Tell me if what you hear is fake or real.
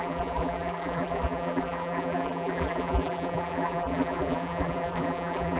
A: fake